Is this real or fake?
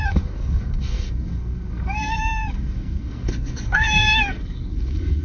fake